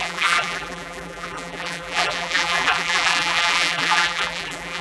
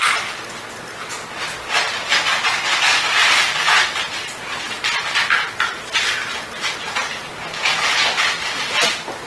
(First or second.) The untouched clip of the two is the second